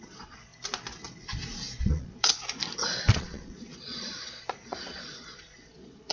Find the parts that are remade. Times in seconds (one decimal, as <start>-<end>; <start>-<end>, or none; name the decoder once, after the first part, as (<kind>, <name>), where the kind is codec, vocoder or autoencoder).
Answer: 0.0-0.5 (vocoder, Vocos); 1.8-2.4; 3.0-6.1